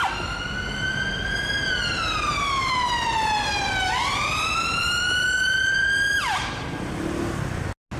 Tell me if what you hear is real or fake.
real